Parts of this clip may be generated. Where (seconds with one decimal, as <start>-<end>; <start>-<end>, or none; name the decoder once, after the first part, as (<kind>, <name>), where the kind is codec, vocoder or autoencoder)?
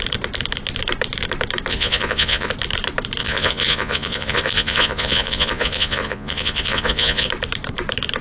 1.7-2.5 (vocoder, Vocos); 3.2-7.3